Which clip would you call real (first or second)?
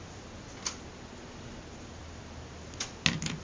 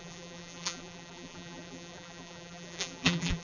first